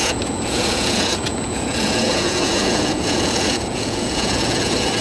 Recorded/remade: remade